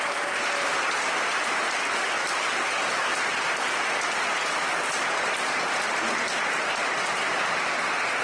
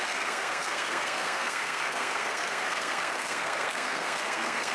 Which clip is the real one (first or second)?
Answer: first